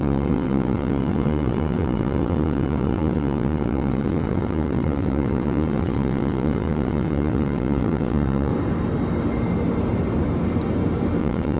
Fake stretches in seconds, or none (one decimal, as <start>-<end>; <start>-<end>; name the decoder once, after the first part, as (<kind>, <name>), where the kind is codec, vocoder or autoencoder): 0.0-8.5 (vocoder, WaveNeXt); 11.2-11.6

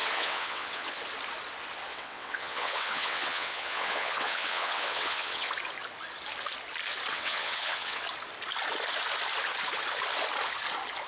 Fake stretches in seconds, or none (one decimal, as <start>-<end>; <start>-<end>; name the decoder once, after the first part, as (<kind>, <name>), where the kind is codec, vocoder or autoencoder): 0.0-1.0 (vocoder, WaveNeXt); 1.9-5.5; 7.1-8.0

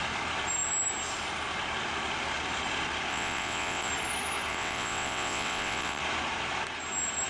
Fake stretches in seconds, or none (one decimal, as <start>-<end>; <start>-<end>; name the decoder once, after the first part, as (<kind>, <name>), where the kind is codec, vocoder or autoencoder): 3.1-3.9 (vocoder, WaveNeXt); 4.5-6.0

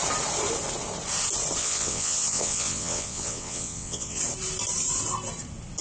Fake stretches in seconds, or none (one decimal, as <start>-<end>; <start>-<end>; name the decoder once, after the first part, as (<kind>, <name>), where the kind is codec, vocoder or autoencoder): 1.6-4.2 (vocoder, WaveNeXt)

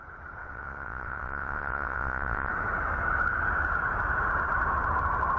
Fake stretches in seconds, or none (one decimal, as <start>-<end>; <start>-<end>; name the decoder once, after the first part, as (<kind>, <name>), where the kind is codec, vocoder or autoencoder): 0.4-2.5 (vocoder, WaveNeXt)

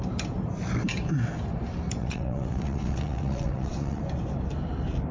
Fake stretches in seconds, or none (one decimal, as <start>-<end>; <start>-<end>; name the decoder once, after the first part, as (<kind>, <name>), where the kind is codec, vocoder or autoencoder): 2.0-4.0 (vocoder, WaveNeXt)